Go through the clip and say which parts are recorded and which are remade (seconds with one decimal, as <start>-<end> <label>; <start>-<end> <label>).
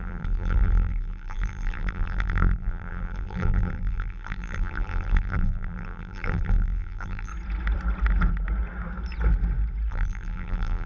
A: 0.0-7.3 remade; 7.3-9.9 recorded; 9.9-10.9 remade